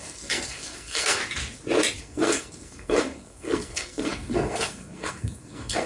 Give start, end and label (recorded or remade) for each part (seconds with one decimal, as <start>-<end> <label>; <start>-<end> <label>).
0.0-1.2 remade; 1.2-2.0 recorded; 2.0-5.9 remade